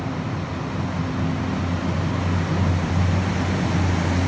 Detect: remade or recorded recorded